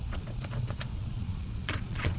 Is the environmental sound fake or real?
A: fake